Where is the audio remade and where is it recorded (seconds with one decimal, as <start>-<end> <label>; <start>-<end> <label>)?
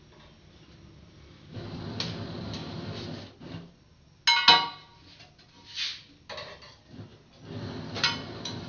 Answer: 0.0-8.7 recorded